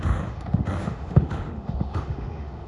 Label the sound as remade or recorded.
remade